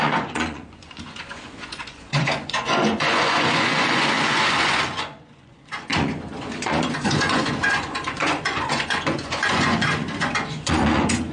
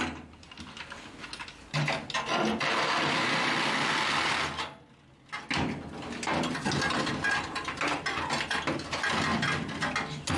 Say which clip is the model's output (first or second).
first